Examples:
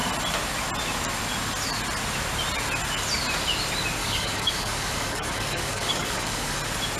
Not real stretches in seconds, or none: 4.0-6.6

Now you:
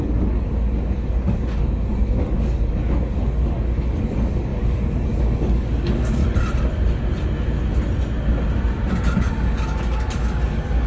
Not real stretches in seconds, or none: 0.0-6.2; 8.9-10.9

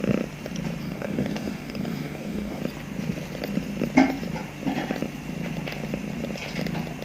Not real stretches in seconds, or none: 0.8-2.6

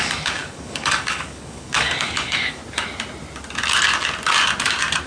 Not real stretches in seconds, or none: 0.0-2.6

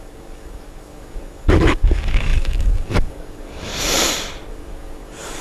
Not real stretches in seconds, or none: 0.0-3.7; 4.5-5.4

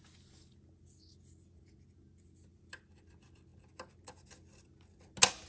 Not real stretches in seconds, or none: none

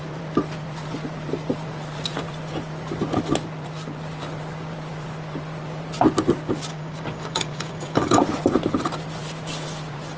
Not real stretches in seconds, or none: 6.7-8.2

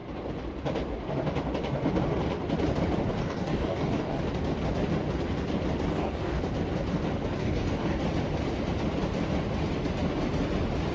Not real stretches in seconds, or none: 3.2-4.2; 5.9-6.4; 7.4-8.0